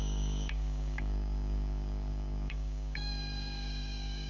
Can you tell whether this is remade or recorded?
remade